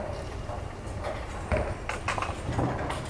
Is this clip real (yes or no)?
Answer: yes